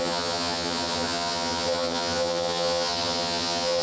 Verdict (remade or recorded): remade